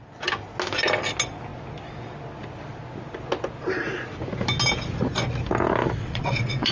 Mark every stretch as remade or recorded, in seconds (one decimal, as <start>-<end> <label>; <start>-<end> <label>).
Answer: 0.0-6.0 recorded; 6.0-6.7 remade